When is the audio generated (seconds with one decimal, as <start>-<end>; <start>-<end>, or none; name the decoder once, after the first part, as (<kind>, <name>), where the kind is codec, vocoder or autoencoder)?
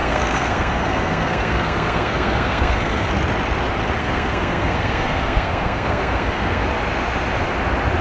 0.0-3.1 (codec, SNAC); 4.0-6.6